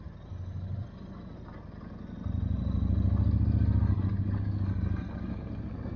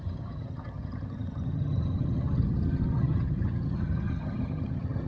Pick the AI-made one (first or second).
second